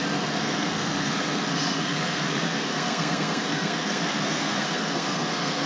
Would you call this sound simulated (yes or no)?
yes